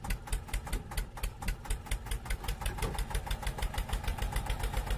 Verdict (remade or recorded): recorded